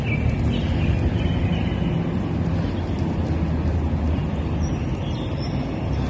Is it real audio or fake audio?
real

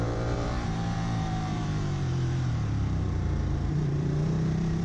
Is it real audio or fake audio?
fake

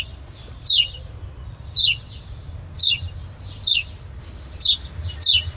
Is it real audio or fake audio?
real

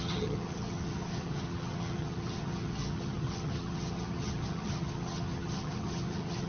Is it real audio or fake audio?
fake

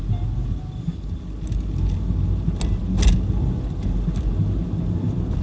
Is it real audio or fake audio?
real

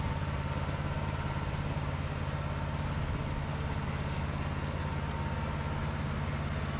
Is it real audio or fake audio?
real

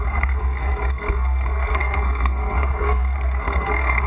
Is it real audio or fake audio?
fake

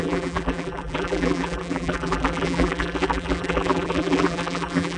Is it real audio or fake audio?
fake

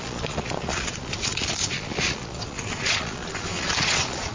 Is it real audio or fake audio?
fake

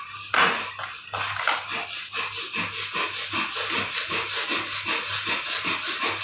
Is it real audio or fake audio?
real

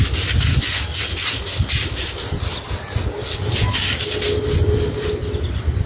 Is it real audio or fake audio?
real